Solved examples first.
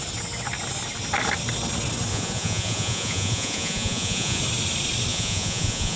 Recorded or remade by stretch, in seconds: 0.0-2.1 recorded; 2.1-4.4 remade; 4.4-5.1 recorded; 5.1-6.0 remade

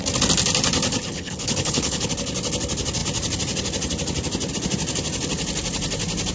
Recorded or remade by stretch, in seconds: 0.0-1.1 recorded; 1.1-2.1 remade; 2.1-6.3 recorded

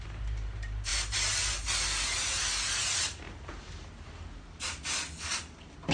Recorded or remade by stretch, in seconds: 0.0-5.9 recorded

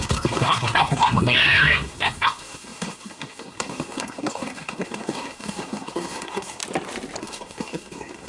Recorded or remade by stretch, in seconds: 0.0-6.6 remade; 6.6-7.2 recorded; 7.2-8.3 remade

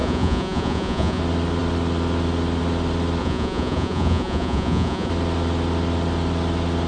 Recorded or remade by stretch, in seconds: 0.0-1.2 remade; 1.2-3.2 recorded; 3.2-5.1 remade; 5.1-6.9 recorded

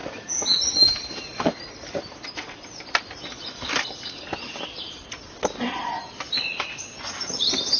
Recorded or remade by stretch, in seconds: 0.0-7.8 recorded

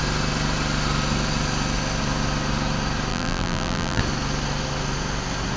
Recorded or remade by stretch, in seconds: 0.0-3.1 recorded; 3.1-4.0 remade; 4.0-5.6 recorded